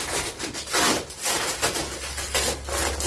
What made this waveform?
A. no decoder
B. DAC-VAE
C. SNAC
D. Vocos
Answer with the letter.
A